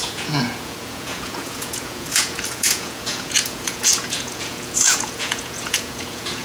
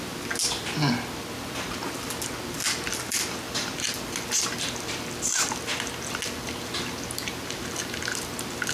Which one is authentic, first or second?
second